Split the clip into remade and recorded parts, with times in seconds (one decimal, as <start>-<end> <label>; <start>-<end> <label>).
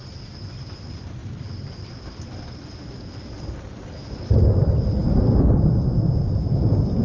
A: 0.0-7.0 recorded